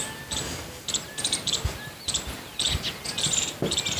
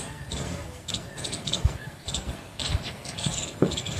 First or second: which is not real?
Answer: second